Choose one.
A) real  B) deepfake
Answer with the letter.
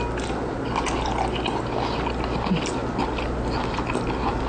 A